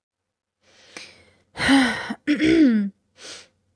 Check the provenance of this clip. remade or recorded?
recorded